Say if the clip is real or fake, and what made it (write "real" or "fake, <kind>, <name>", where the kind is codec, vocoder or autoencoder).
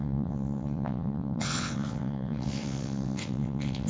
fake, vocoder, WaveNeXt